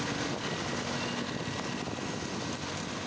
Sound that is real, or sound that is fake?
real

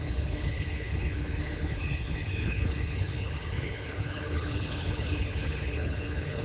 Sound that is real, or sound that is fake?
fake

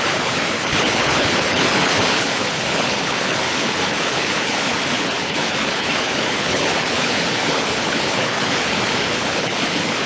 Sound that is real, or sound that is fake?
fake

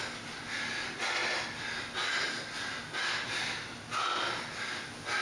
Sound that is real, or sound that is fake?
real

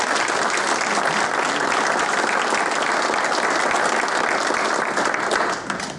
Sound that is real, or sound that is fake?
real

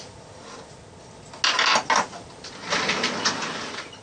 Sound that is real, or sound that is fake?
real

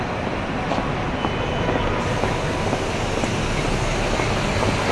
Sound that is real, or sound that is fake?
real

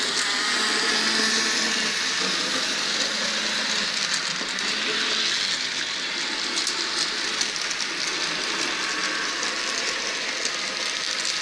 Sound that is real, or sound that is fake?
real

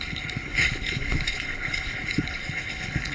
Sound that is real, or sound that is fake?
fake